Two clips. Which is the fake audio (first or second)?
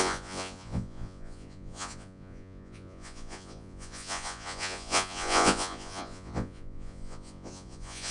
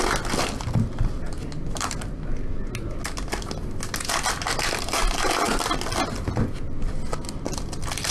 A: first